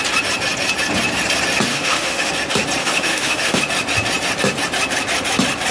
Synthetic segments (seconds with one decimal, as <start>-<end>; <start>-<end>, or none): 1.7-2.3; 2.8-3.6